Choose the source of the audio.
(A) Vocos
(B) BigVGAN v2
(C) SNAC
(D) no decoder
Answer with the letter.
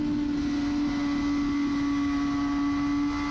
D